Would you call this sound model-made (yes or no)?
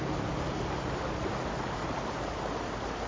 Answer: no